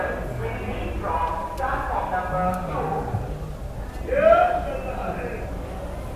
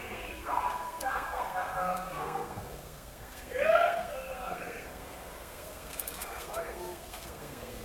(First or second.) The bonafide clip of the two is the first